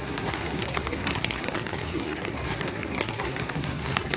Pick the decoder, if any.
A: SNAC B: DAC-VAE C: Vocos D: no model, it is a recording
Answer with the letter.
A